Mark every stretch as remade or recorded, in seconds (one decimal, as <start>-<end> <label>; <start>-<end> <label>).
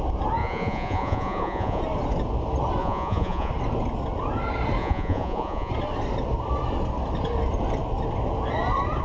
0.0-0.4 recorded; 0.4-1.8 remade; 1.8-2.8 recorded; 2.8-3.5 remade; 3.5-4.8 recorded; 4.8-5.7 remade; 5.7-9.0 recorded